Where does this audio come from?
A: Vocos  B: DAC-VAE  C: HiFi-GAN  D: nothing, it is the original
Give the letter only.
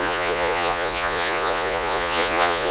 A